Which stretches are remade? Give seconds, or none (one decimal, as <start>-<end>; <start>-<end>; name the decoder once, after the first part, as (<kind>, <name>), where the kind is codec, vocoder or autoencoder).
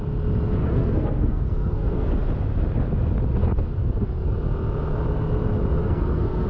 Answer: 0.6-2.1 (codec, SNAC); 3.4-4.3; 5.8-6.5